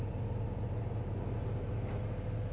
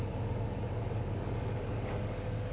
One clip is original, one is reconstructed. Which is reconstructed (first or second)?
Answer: second